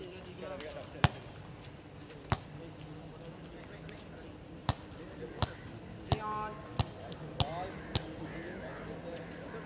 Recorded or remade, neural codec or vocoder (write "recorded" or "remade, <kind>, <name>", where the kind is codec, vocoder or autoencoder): recorded